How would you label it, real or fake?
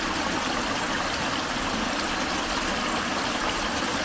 real